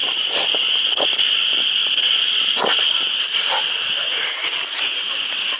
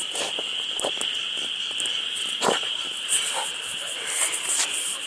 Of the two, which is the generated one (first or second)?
first